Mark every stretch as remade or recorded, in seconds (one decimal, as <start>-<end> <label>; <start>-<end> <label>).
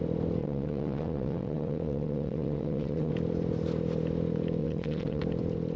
0.0-0.4 recorded; 0.4-3.1 remade; 3.1-4.6 recorded; 4.6-5.2 remade; 5.2-5.8 recorded